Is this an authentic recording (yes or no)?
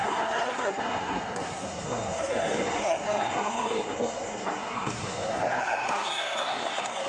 no